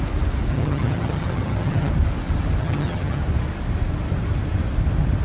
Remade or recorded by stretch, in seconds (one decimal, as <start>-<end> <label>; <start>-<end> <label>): 0.0-0.5 recorded; 0.5-1.9 remade; 1.9-2.6 recorded; 2.6-3.2 remade; 3.2-5.2 recorded